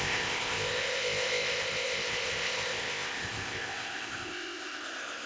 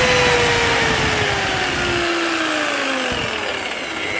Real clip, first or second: second